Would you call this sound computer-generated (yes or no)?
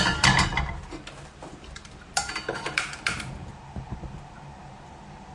yes